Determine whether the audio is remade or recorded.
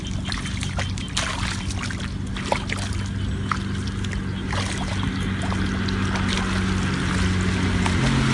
recorded